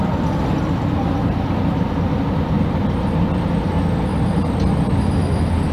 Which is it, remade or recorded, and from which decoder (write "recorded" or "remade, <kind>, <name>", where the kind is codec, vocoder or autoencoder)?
recorded